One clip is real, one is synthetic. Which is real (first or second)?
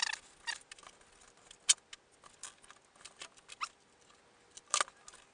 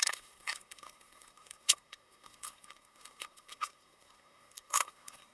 first